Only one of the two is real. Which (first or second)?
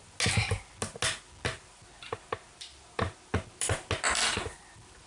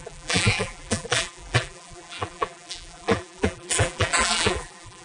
first